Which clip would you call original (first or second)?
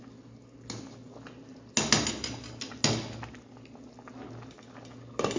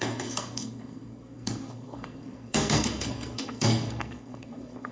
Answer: first